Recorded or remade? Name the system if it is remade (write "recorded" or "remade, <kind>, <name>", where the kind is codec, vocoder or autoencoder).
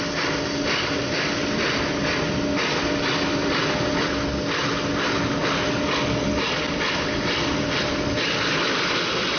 recorded